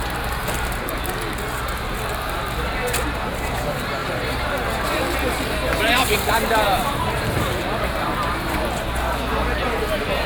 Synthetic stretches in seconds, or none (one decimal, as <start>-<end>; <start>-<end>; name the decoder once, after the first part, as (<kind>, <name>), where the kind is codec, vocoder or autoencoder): 4.0-8.7 (vocoder, BigVGAN v2)

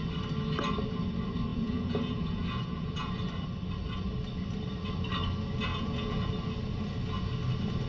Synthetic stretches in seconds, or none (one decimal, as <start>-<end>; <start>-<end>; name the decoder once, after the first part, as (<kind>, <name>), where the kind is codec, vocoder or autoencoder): 1.5-3.1 (vocoder, Vocos); 5.7-6.3

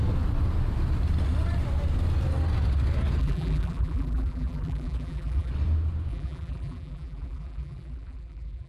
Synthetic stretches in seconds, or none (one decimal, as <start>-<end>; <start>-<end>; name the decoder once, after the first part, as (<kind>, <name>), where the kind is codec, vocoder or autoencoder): 3.2-5.5 (vocoder, BigVGAN v2); 6.1-8.7